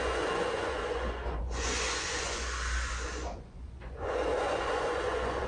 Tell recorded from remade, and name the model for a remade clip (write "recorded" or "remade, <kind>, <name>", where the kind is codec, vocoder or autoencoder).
remade, vocoder, Vocos